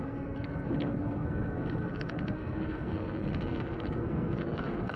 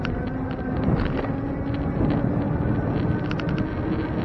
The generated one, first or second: first